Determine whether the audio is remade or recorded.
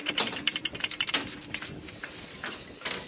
recorded